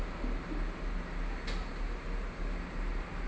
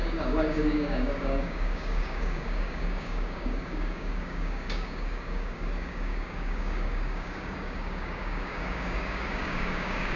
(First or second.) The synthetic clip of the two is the second